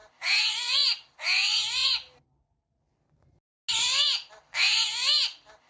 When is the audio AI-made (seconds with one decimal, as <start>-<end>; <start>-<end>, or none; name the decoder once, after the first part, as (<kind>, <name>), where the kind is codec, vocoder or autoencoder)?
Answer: none